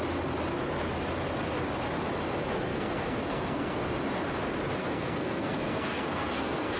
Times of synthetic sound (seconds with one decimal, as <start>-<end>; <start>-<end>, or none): 2.7-3.8; 4.8-6.8